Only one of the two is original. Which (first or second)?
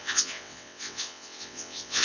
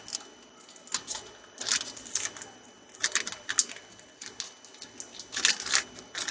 second